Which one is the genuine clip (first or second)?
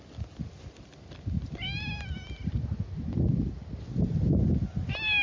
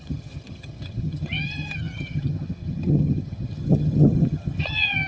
first